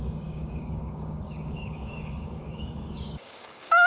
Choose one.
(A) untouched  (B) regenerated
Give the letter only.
B